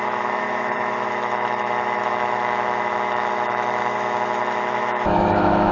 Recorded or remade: remade